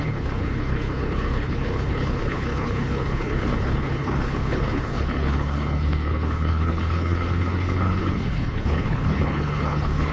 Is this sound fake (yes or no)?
yes